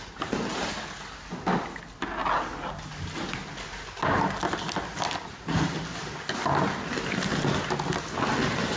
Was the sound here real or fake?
real